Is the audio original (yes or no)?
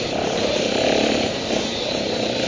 no